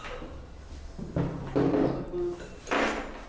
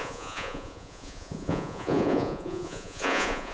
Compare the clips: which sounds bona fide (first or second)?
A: first